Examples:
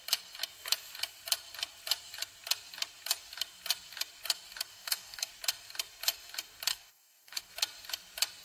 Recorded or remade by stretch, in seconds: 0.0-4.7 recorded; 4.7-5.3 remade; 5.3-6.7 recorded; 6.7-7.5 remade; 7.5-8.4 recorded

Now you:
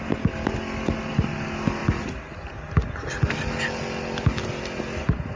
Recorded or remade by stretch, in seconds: 0.0-5.4 recorded